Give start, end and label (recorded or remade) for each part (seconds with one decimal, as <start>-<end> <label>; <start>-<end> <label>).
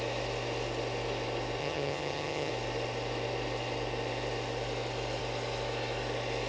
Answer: 0.0-1.6 recorded; 1.6-2.5 remade; 2.5-6.5 recorded